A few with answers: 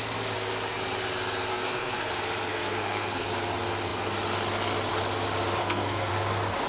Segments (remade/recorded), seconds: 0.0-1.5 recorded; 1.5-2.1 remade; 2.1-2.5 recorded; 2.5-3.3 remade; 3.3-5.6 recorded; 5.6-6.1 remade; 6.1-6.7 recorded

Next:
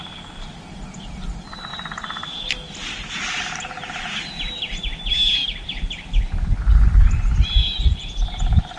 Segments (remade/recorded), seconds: 0.0-1.7 remade; 1.7-4.0 recorded; 4.0-4.9 remade; 4.9-6.6 recorded; 6.6-8.8 remade

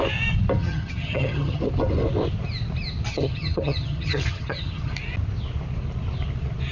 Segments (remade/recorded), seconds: 0.0-0.6 recorded; 0.6-1.6 remade; 1.6-3.1 recorded; 3.1-4.9 remade; 4.9-6.7 recorded